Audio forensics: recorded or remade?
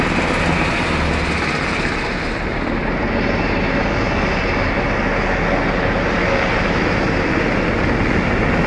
recorded